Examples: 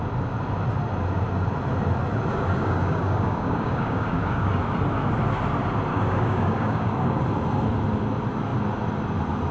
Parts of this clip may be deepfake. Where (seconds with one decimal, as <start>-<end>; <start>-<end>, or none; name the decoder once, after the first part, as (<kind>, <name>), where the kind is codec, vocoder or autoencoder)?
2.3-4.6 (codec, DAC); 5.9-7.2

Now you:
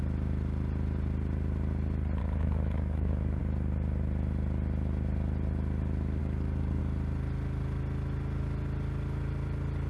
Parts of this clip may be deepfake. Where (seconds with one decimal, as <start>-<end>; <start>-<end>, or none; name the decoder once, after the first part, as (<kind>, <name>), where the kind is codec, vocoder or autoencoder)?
2.2-3.4 (codec, DAC); 6.2-6.8

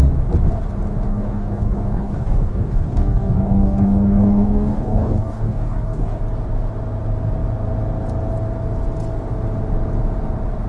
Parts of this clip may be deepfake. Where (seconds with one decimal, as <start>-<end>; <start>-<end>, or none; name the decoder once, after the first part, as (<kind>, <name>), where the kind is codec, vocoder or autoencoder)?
1.1-6.2 (codec, DAC)

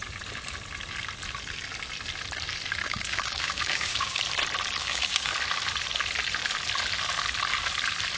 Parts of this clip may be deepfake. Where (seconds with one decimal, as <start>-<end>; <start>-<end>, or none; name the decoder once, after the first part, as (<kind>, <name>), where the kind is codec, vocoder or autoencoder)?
2.8-4.2 (codec, DAC); 4.8-5.3

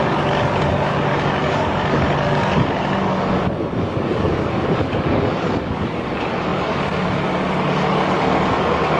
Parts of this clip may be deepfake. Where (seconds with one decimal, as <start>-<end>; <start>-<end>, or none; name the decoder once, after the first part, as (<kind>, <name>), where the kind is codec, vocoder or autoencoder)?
0.0-9.0 (codec, DAC)

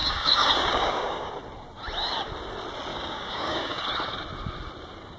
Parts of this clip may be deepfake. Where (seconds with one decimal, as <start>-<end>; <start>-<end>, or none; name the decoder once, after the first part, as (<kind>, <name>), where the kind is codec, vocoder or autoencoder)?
0.0-1.3 (codec, DAC); 2.9-3.8

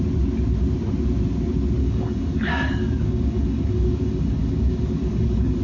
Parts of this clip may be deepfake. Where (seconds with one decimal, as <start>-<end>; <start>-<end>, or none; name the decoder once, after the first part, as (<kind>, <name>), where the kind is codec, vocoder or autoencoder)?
1.8-5.6 (codec, DAC)